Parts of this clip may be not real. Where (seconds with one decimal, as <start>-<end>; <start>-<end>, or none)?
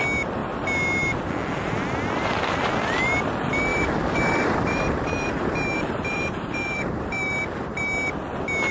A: 3.7-7.8